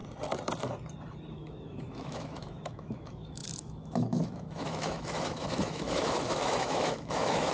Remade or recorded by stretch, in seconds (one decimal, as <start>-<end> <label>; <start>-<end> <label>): 0.0-1.3 recorded; 1.3-7.5 remade